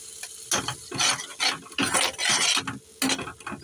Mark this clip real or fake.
real